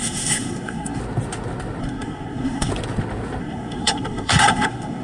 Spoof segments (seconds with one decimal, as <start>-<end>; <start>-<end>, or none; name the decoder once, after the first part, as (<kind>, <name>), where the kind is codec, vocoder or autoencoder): 0.0-1.0 (codec, SNAC); 1.8-2.7; 3.4-5.0